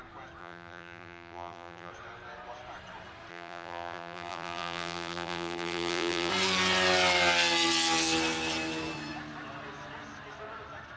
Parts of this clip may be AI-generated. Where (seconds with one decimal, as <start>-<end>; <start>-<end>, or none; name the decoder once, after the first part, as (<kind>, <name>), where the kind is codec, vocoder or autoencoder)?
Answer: 0.4-1.9 (vocoder, BigVGAN v2); 3.3-6.3